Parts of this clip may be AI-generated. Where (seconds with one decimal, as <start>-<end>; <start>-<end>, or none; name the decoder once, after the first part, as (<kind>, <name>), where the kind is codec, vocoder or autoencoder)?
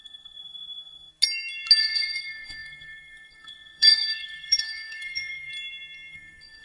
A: 0.0-1.1 (codec, SNAC); 1.8-5.5; 6.1-6.6